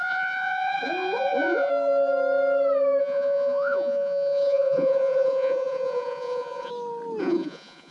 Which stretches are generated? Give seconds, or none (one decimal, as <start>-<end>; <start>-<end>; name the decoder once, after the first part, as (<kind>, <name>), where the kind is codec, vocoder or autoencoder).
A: 0.0-1.7 (vocoder, Vocos); 3.0-6.7; 7.2-7.9